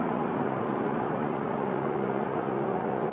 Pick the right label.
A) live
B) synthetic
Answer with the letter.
B